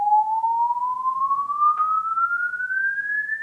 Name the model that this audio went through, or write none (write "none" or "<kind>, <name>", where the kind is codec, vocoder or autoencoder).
none